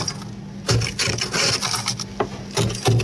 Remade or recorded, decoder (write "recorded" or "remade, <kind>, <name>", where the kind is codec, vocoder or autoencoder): recorded